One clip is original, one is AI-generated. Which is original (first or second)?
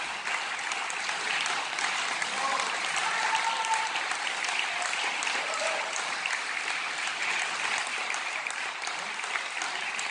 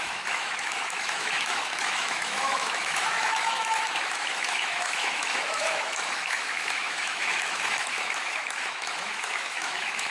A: first